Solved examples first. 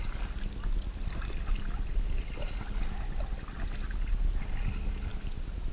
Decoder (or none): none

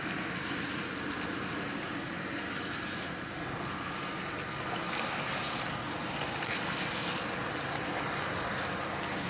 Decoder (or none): none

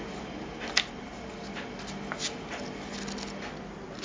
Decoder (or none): none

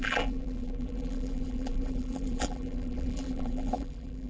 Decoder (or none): vocoder, BigVGAN v2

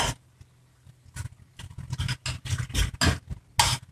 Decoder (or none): none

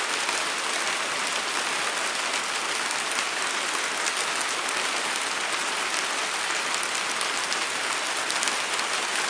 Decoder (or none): none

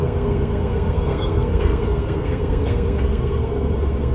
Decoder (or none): codec, SNAC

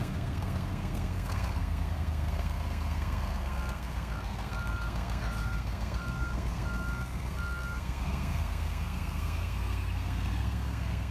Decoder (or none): codec, SNAC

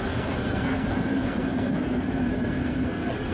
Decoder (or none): codec, SNAC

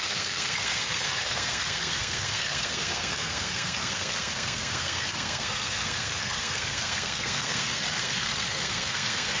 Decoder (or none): codec, SNAC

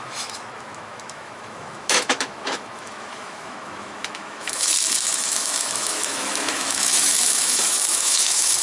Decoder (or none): autoencoder, DAC-VAE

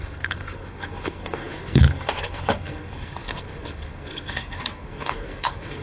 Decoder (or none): codec, SNAC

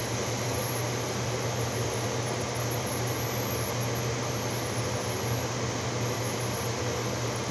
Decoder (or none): none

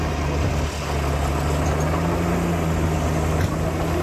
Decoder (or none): none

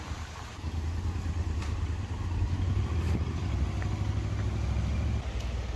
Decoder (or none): none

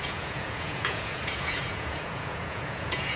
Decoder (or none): vocoder, Vocos